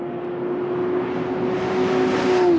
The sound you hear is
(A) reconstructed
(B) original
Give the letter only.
B